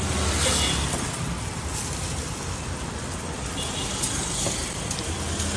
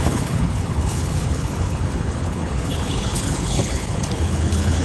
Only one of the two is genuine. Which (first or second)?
first